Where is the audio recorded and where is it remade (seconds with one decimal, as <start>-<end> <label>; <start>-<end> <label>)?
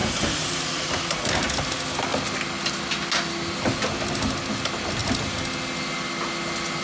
0.0-6.8 recorded